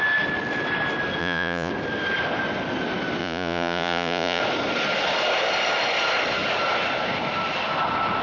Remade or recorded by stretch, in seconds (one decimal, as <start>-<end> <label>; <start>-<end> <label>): 0.0-1.2 recorded; 1.2-1.7 remade; 1.7-3.2 recorded; 3.2-4.4 remade; 4.4-8.2 recorded